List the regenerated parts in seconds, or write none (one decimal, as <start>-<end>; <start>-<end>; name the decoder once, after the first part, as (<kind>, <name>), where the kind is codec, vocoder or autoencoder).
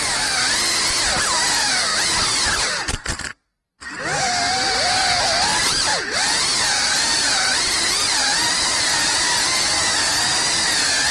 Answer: 5.5-9.8 (vocoder, BigVGAN v2)